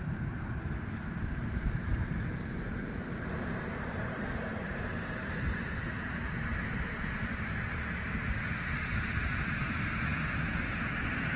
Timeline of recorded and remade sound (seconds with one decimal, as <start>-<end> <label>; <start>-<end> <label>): 0.0-10.1 remade; 10.1-11.0 recorded; 11.0-11.4 remade